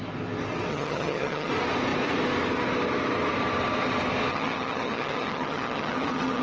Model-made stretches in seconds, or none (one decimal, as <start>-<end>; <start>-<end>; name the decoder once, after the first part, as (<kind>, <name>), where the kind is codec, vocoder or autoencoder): 0.7-1.5 (vocoder, HiFi-GAN); 4.3-6.4